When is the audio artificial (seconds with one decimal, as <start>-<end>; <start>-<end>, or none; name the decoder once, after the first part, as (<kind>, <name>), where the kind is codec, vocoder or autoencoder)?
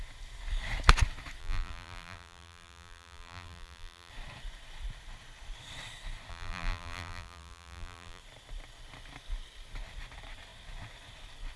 1.4-4.1 (vocoder, BigVGAN v2); 6.3-8.2